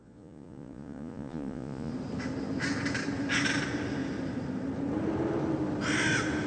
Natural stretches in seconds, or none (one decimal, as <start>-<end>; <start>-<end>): 1.9-6.5